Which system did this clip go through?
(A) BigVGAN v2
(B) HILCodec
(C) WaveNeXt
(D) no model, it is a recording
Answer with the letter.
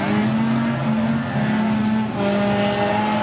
D